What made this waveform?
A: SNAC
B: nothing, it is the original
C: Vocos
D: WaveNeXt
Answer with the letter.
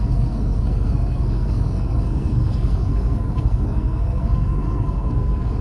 A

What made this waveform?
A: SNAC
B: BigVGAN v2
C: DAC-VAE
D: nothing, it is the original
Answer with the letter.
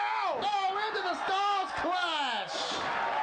D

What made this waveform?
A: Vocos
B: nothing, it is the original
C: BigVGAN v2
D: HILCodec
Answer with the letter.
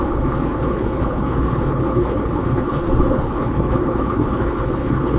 D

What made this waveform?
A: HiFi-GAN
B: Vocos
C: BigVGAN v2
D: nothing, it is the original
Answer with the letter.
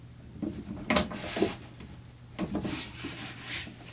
D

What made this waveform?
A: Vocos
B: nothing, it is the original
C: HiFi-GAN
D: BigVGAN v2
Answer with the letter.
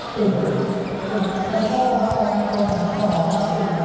B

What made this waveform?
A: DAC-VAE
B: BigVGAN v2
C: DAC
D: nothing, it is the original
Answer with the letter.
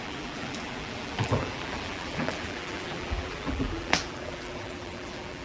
B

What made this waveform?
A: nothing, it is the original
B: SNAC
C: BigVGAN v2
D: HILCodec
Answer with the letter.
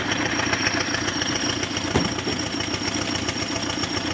A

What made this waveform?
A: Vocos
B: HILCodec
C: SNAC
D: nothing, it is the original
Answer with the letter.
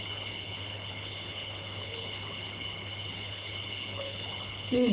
B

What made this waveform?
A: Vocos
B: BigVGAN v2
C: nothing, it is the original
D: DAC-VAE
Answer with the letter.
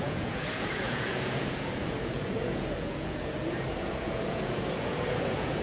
A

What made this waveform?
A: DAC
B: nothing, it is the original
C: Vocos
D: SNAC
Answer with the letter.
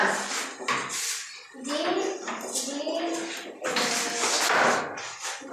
B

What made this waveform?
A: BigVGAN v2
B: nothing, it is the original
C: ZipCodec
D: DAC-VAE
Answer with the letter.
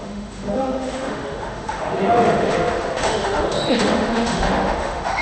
D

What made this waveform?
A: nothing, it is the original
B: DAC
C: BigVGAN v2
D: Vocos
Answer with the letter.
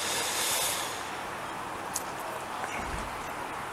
A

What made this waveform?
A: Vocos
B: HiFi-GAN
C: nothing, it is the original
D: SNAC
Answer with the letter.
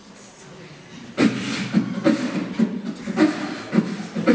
C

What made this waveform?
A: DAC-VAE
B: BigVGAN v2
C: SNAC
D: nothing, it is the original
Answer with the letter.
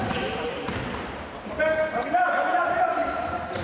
B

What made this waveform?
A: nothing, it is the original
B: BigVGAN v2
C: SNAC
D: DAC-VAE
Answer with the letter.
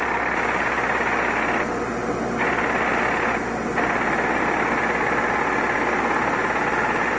A